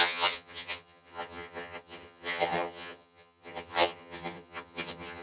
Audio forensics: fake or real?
fake